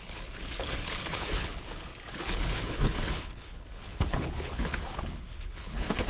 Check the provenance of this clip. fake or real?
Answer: fake